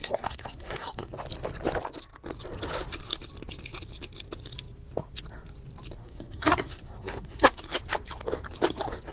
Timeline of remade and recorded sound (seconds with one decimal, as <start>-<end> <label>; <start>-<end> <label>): 0.0-1.1 remade; 1.1-6.0 recorded; 6.0-7.6 remade; 7.6-9.1 recorded